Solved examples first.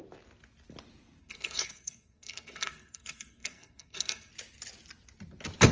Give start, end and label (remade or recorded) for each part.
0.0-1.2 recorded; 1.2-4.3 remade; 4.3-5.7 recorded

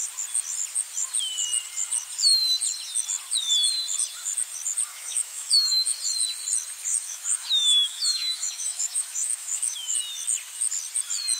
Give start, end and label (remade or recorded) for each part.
0.0-4.9 recorded; 4.9-6.0 remade; 6.0-6.9 recorded; 6.9-9.9 remade; 9.9-11.4 recorded

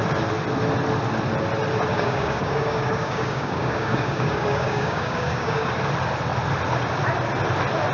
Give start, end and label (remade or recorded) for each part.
0.0-1.9 recorded; 1.9-5.7 remade; 5.7-7.9 recorded

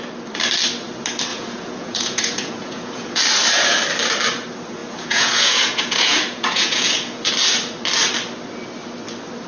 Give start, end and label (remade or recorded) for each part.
0.0-1.3 recorded; 1.3-3.2 remade; 3.2-4.8 recorded; 4.8-7.3 remade; 7.3-9.5 recorded

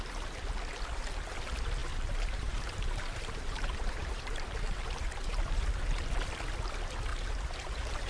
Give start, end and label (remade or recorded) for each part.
0.0-1.8 recorded; 1.8-5.7 remade; 5.7-7.1 recorded; 7.1-8.1 remade

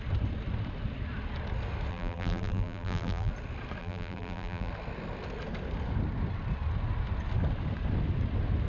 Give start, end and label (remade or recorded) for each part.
0.0-1.9 recorded; 1.9-3.3 remade; 3.3-3.8 recorded; 3.8-4.7 remade; 4.7-8.7 recorded

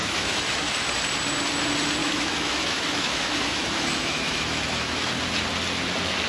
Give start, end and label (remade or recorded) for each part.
0.0-0.7 remade; 0.7-2.0 recorded; 2.0-5.1 remade; 5.1-6.3 recorded